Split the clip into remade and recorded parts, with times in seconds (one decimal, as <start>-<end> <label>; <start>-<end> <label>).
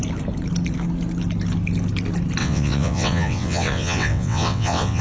0.0-2.4 recorded; 2.4-5.0 remade